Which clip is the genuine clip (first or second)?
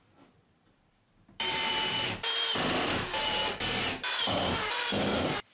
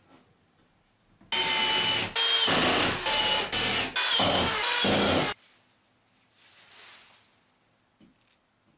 second